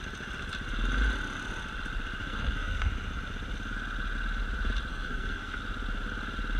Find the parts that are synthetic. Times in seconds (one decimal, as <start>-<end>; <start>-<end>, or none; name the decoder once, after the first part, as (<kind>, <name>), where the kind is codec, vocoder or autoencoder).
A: 2.2-2.9 (codec, SNAC); 4.9-5.6